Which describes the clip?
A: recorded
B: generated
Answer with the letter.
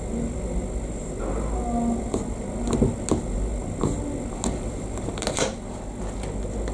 A